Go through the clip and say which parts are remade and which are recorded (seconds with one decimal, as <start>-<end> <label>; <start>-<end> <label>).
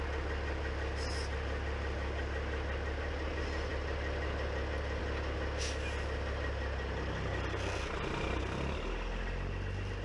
0.0-10.0 recorded